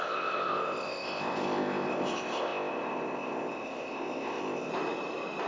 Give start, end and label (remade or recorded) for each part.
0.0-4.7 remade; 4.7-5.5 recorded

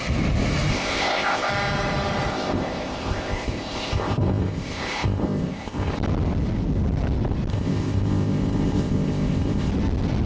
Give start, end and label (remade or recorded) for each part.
0.0-0.7 recorded; 0.7-1.5 remade; 1.5-2.3 recorded; 2.3-5.9 remade; 5.9-7.5 recorded; 7.5-9.7 remade; 9.7-10.3 recorded

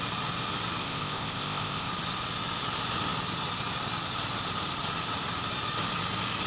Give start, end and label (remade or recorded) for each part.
0.0-0.8 recorded; 0.8-1.9 remade; 1.9-6.5 recorded

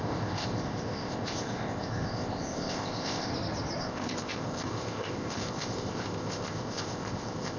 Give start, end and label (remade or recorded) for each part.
0.0-3.3 remade; 3.3-3.8 recorded; 3.8-7.6 remade

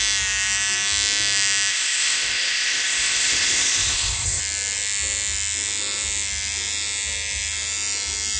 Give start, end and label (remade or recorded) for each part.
0.0-1.7 recorded; 1.7-4.4 remade; 4.4-8.4 recorded

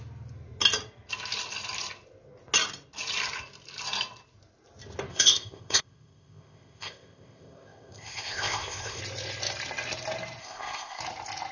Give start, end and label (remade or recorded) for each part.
0.0-5.1 recorded; 5.1-9.0 remade; 9.0-10.4 recorded; 10.4-11.0 remade; 11.0-11.5 recorded

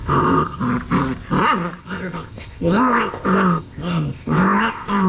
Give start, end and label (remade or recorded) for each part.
0.0-0.6 remade; 0.6-1.8 recorded; 1.8-5.1 remade